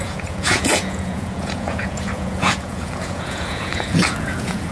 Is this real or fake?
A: fake